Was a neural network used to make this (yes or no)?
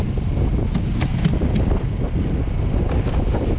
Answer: no